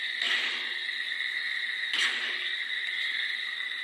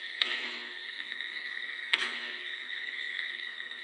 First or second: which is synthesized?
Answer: second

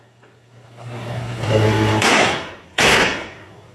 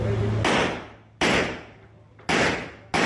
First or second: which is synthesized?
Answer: first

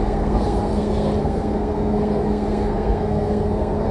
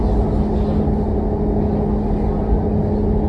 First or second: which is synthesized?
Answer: first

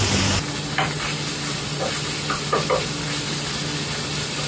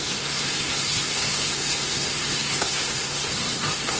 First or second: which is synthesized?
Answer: second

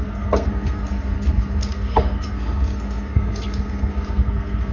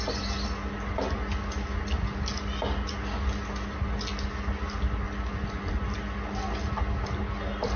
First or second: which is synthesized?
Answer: first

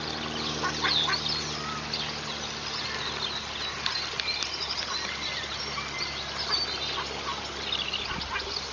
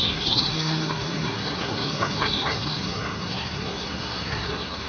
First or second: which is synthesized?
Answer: second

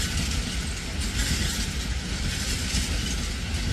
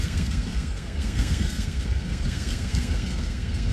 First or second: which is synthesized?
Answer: second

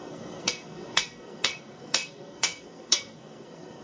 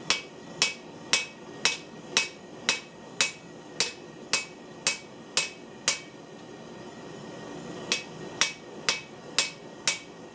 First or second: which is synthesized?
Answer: first